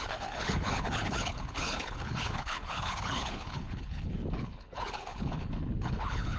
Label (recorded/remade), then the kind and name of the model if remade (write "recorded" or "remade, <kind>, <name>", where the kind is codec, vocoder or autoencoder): remade, codec, HILCodec